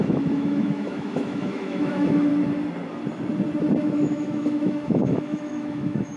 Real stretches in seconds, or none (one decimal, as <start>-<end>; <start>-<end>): 2.3-3.8